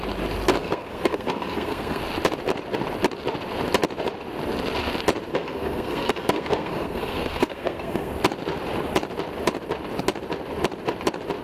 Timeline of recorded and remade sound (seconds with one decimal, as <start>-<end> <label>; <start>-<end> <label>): 0.0-0.6 recorded; 0.6-2.0 remade; 2.0-5.3 recorded; 5.3-8.1 remade; 8.1-11.4 recorded